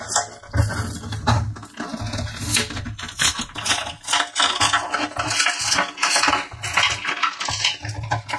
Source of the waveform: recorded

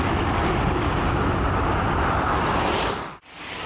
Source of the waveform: recorded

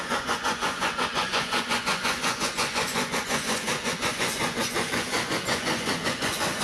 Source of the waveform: remade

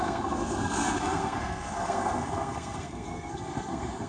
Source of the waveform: remade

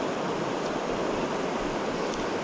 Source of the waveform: recorded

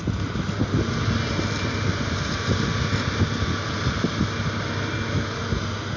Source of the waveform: recorded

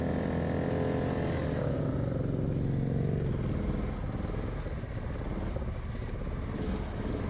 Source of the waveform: recorded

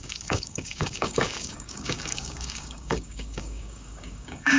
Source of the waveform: remade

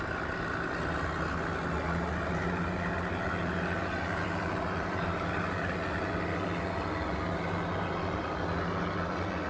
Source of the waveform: recorded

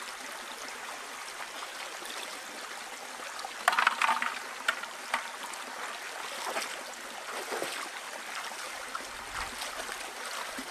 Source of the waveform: recorded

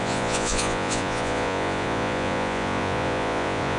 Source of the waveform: remade